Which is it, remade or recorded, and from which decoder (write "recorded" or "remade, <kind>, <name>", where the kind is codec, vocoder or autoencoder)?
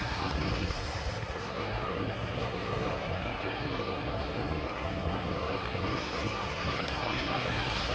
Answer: remade, codec, SNAC